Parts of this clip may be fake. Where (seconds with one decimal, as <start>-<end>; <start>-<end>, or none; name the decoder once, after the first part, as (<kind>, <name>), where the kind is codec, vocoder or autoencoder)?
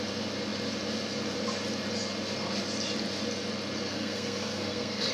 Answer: 3.9-5.1 (codec, SNAC)